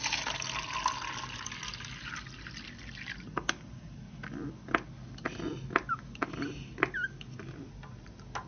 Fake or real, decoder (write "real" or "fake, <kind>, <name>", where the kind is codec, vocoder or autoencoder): real